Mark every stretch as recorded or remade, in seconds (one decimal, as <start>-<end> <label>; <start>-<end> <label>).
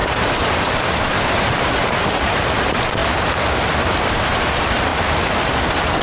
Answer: 0.0-3.0 remade; 3.0-4.1 recorded; 4.1-4.9 remade; 4.9-6.0 recorded